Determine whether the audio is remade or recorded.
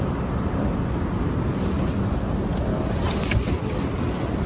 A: recorded